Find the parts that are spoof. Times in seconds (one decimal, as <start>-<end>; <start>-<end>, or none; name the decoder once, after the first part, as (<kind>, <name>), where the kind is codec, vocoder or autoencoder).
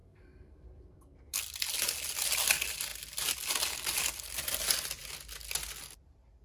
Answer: 0.0-1.4 (codec, SNAC)